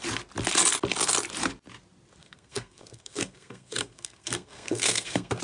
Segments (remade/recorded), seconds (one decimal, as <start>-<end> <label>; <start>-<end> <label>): 0.0-2.2 recorded; 2.2-5.4 remade